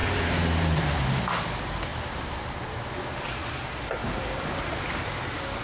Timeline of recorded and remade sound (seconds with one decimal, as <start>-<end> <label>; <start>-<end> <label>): 0.0-1.2 remade; 1.2-1.9 recorded; 1.9-2.8 remade; 2.8-3.4 recorded; 3.4-4.8 remade; 4.8-5.6 recorded